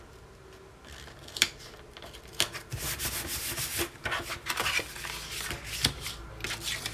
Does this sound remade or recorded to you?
recorded